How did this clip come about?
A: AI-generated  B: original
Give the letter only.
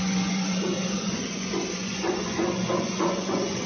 A